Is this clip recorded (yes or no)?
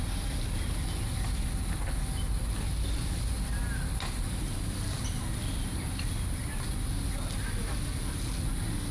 yes